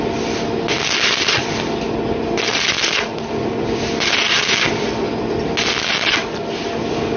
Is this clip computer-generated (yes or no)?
no